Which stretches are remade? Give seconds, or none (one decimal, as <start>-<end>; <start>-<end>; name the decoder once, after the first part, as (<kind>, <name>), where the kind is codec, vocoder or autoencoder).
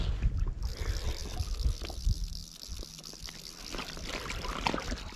none